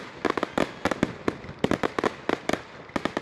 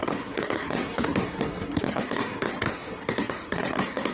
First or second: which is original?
first